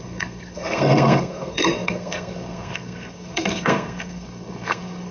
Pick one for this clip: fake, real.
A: fake